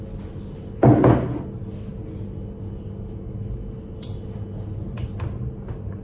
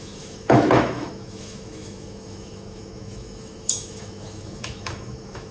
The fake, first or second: second